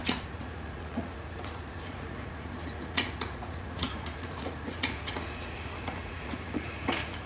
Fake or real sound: fake